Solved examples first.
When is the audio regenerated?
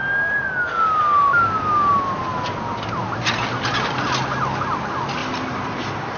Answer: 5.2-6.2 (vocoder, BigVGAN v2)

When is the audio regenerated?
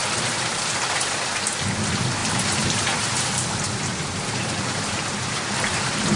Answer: 0.0-0.8 (vocoder, BigVGAN v2); 2.2-6.2